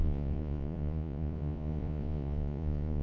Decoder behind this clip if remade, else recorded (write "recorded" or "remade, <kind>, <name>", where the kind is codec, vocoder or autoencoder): remade, vocoder, Vocos